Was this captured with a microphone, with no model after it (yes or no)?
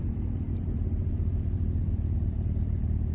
no